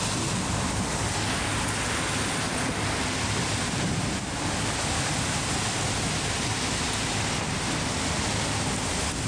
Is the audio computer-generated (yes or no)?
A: no